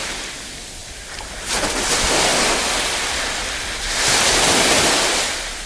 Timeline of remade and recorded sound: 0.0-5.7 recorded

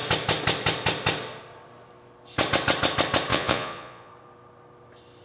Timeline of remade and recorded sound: 0.0-3.3 recorded; 3.3-4.1 remade; 4.1-5.2 recorded

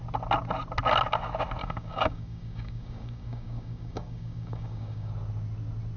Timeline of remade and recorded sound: 0.0-1.6 recorded; 1.6-5.1 remade; 5.1-6.0 recorded

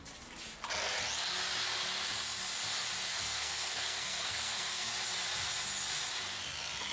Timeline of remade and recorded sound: 0.0-3.1 recorded; 3.1-4.9 remade; 4.9-6.9 recorded

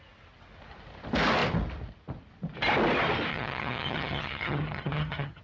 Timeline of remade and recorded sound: 0.0-3.3 recorded; 3.3-5.4 remade